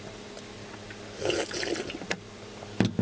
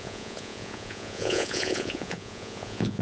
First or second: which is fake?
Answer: second